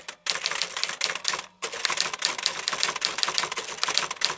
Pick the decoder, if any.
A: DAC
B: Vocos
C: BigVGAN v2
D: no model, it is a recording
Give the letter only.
D